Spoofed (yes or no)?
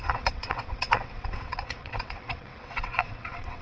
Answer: yes